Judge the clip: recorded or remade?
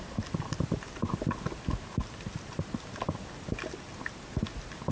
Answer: recorded